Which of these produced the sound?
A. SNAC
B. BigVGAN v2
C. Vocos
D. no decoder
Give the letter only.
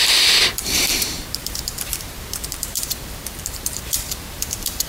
B